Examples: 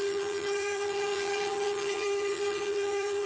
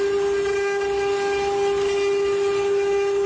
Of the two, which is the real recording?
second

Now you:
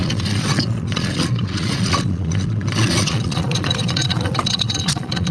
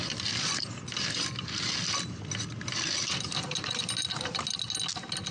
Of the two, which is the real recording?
second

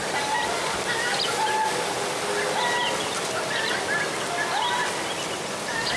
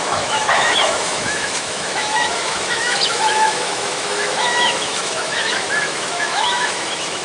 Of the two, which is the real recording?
first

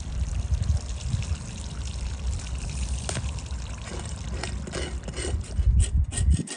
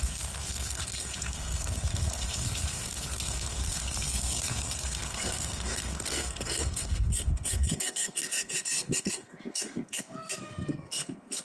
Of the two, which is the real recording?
first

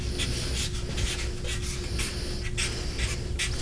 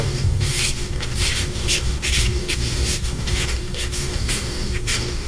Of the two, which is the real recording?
first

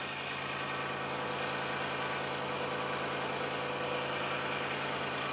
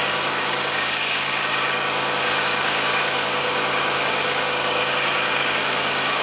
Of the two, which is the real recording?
first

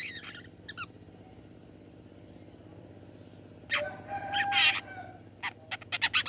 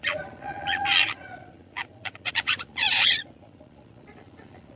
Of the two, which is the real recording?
first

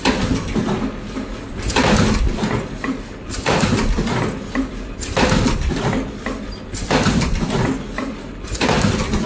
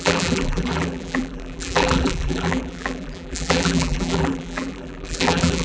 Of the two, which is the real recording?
first